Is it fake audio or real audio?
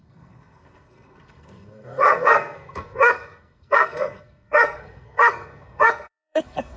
fake